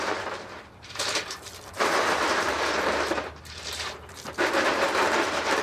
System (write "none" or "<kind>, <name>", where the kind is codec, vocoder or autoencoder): vocoder, BigVGAN v2